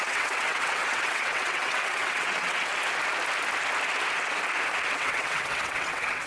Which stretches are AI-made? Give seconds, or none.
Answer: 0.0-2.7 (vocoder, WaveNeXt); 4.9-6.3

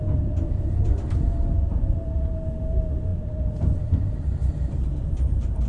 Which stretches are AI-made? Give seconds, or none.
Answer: 0.0-5.7 (vocoder, BigVGAN v2)